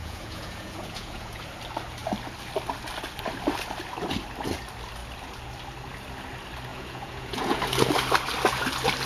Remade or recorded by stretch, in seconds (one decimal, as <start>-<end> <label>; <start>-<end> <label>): 0.0-1.4 remade; 1.4-6.7 recorded; 6.7-7.6 remade; 7.6-9.1 recorded